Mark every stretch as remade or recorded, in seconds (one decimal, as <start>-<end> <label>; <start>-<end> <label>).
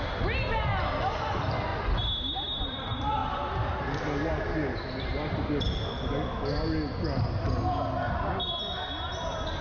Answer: 0.0-9.6 recorded